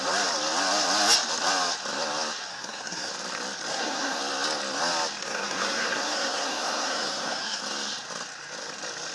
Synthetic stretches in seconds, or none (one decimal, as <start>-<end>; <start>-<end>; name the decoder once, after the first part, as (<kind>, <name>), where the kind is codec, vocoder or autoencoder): 2.5-3.1 (codec, SNAC); 3.7-4.2; 5.2-7.6